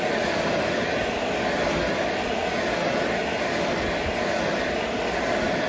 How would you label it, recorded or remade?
recorded